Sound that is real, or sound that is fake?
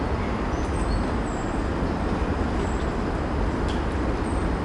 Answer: real